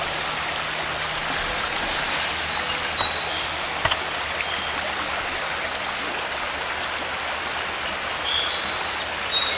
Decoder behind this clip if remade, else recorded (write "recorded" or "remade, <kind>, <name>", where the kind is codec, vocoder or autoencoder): recorded